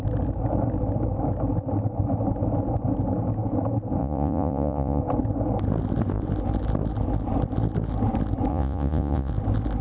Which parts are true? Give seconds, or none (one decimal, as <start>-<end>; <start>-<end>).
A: 0.0-4.0; 5.0-8.5; 9.3-9.8